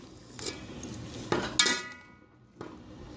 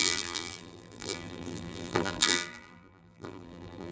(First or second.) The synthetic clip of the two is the second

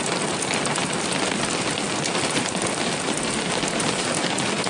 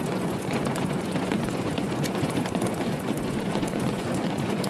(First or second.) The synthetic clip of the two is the second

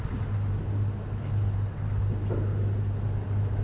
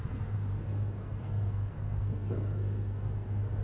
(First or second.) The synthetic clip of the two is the second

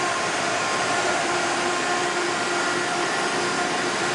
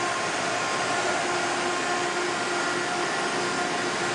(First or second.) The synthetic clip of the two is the first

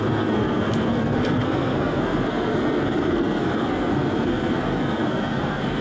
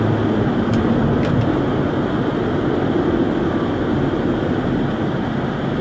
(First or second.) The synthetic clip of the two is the first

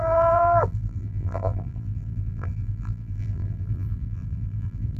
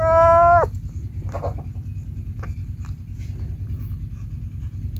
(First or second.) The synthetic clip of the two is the first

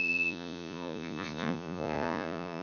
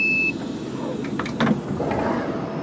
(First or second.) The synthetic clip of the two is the first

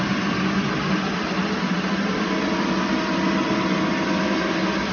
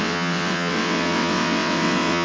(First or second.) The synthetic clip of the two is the second